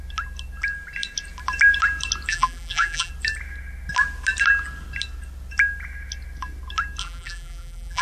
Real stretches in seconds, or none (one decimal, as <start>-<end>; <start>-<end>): 0.0-2.3; 3.1-7.0

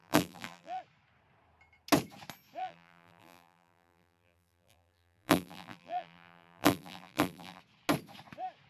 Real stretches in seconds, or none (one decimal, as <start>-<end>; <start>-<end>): 0.8-2.6; 7.6-8.7